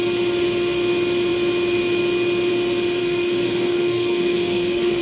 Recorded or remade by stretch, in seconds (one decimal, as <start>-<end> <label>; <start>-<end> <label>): 0.0-3.0 recorded; 3.0-5.0 remade